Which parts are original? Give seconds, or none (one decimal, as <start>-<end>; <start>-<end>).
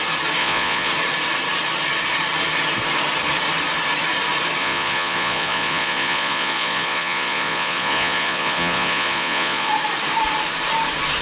0.0-0.4; 0.9-4.6; 9.7-11.2